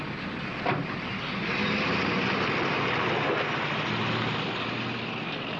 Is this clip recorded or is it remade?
recorded